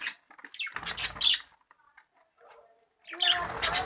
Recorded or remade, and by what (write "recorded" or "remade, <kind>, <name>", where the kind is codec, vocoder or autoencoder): recorded